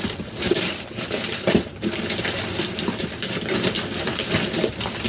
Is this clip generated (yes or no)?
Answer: yes